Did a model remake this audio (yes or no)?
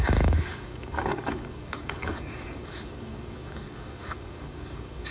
yes